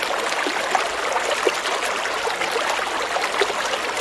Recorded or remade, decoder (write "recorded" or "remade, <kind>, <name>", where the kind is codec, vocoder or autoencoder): recorded